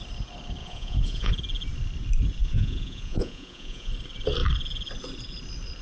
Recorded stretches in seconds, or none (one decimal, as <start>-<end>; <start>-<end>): 0.0-0.6; 1.3-2.4; 3.9-5.8